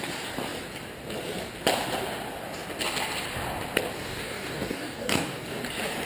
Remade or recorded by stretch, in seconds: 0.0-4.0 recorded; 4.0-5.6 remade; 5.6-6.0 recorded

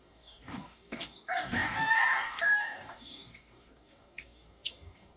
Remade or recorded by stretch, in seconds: 0.0-5.2 remade

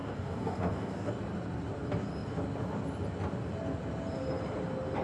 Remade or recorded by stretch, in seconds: 0.0-1.1 remade; 1.1-5.0 recorded

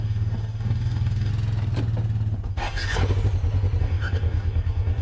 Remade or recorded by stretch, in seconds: 0.0-1.3 remade; 1.3-2.5 recorded; 2.5-3.0 remade; 3.0-3.8 recorded; 3.8-5.0 remade

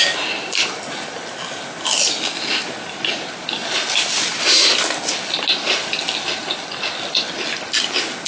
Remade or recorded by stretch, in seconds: 0.0-8.3 recorded